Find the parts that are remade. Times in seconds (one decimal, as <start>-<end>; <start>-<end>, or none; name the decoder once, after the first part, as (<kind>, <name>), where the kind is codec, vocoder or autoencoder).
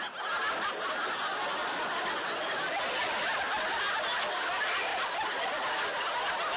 none